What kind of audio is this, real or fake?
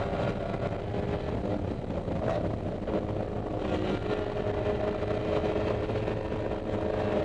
real